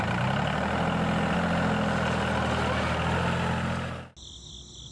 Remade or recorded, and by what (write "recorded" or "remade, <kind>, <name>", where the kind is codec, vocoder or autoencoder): recorded